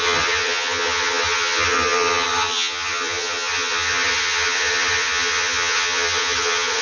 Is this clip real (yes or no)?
no